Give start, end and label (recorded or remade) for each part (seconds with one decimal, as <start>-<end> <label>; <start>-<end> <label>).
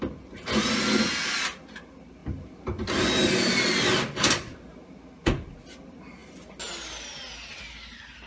0.0-8.3 recorded